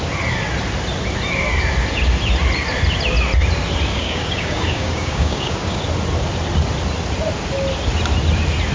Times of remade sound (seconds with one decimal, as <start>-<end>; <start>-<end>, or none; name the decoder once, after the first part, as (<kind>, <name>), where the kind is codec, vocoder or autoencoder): 3.9-5.8 (codec, DAC)

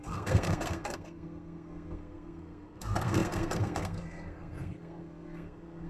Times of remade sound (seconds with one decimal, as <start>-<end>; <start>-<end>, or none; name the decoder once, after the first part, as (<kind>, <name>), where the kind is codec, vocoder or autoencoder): 0.0-5.9 (codec, SNAC)

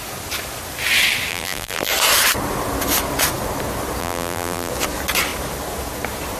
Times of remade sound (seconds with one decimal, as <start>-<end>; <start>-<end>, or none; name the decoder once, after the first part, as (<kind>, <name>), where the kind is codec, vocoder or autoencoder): 1.3-1.9 (vocoder, BigVGAN v2); 4.0-4.7

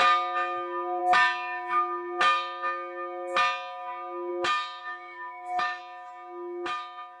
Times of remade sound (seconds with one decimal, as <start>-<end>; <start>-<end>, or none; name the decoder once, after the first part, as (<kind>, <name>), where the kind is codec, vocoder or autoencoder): 4.8-5.8 (autoencoder, DAC-VAE)

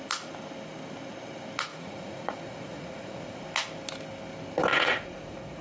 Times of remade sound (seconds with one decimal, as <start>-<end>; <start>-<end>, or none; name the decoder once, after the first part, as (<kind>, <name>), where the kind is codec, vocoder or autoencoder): 1.7-3.4 (vocoder, Vocos); 4.7-5.6

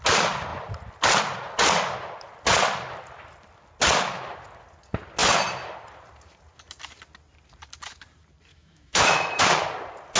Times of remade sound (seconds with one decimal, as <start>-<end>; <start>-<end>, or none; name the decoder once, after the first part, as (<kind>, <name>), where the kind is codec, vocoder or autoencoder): 8.5-9.4 (autoencoder, DAC-VAE)

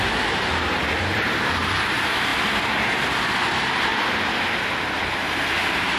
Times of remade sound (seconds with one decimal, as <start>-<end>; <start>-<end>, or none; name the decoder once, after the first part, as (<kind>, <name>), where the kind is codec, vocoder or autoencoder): 0.0-3.9 (vocoder, BigVGAN v2); 5.2-6.0

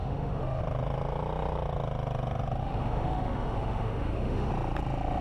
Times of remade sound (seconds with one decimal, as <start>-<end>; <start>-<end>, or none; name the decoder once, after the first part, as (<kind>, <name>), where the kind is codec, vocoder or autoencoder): 0.0-0.6 (autoencoder, DAC-VAE); 2.6-4.5